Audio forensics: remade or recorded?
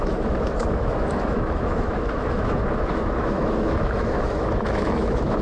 remade